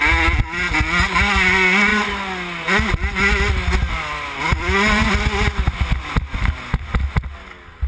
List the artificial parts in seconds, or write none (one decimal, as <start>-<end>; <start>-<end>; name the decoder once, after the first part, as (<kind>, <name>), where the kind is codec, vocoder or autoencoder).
none